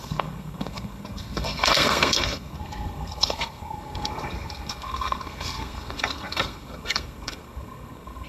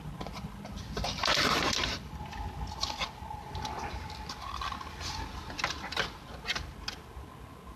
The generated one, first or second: first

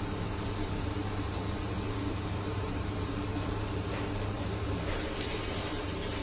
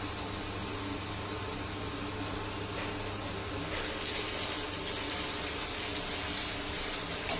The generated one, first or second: first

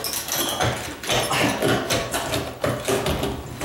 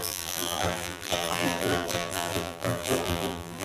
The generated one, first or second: second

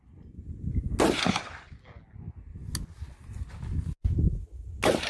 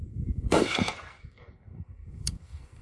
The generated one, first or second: second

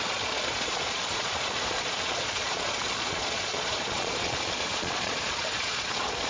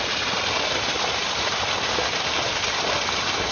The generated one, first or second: first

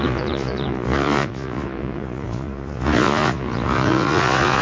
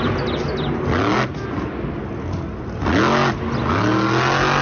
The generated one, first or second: first